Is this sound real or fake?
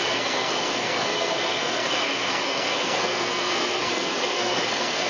fake